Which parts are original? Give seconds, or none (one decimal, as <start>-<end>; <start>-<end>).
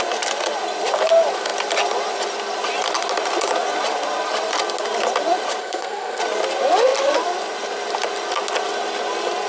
0.0-5.6; 6.2-9.5